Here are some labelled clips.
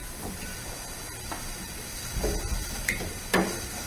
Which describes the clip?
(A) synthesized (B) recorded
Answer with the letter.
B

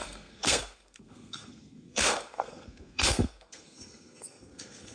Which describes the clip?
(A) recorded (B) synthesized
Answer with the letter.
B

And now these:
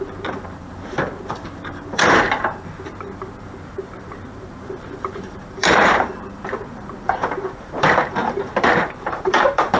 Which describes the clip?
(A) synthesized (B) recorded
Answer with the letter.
A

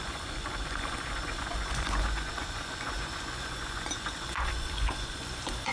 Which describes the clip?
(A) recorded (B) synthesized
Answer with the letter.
B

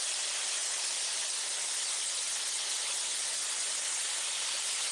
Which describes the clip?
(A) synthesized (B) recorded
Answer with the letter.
B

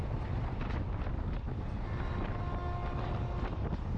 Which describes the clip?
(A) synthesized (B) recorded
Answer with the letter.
B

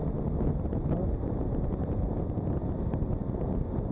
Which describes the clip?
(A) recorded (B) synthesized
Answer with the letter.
A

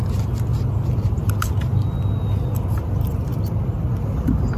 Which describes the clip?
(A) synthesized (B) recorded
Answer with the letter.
B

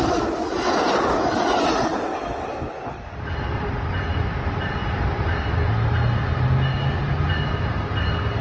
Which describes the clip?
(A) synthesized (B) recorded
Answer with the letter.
B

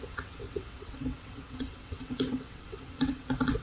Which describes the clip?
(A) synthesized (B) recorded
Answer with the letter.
A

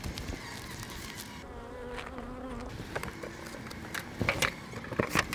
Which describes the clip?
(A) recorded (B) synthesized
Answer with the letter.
A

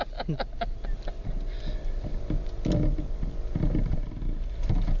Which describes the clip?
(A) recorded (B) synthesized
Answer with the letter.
A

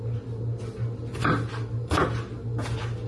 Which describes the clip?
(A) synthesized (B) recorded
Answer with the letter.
B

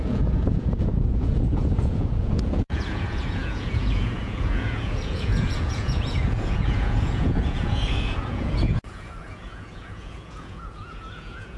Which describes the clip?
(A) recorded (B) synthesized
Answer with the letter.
B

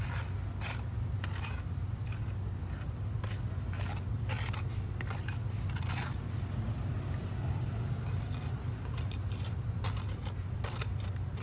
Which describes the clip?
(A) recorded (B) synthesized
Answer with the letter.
A